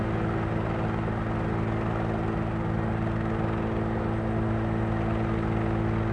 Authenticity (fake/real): real